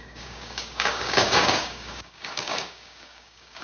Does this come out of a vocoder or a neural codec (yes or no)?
yes